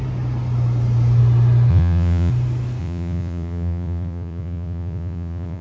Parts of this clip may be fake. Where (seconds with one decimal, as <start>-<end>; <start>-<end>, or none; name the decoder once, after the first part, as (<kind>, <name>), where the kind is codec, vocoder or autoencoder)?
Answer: 1.7-2.3 (vocoder, Vocos); 2.8-5.6